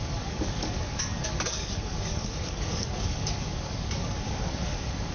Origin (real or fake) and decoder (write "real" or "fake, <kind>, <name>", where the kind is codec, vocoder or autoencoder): fake, codec, DAC